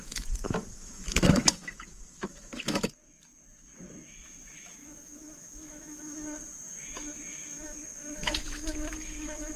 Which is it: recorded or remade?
remade